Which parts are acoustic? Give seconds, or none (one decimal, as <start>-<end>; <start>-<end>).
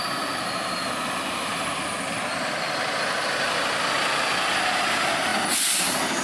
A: 0.0-5.3; 5.8-6.2